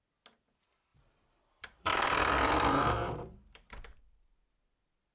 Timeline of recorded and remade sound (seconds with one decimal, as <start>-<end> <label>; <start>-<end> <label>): 0.0-0.9 recorded; 0.9-4.0 remade; 4.0-5.1 recorded